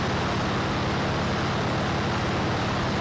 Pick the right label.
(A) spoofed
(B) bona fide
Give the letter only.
B